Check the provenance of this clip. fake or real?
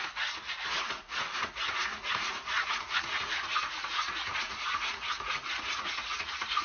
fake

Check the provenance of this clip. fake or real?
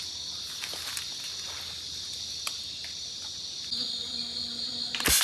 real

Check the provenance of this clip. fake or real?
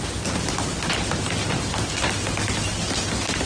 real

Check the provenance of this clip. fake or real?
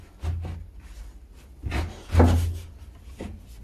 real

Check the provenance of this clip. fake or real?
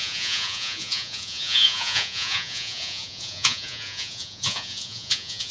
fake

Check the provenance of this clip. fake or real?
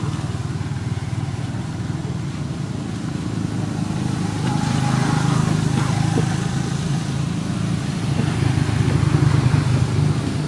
real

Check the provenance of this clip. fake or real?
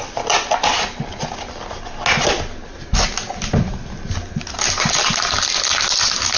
real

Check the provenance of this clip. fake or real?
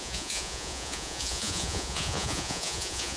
fake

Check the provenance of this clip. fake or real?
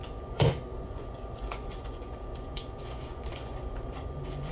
fake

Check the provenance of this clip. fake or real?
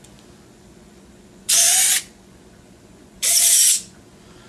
fake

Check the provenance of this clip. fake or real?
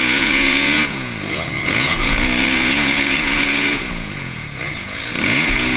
fake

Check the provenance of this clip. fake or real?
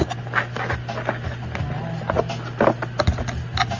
real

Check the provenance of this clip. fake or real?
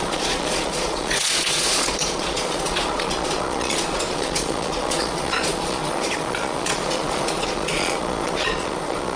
fake